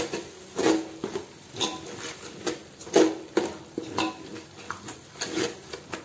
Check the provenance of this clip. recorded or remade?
recorded